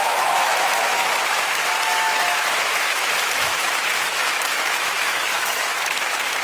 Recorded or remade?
remade